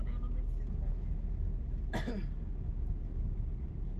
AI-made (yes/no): no